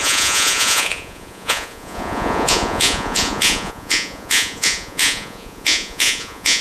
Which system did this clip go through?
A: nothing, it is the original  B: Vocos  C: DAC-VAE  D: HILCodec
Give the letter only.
B